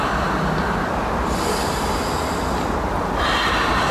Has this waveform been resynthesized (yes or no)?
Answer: no